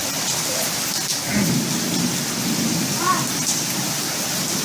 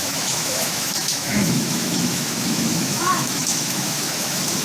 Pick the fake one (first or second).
second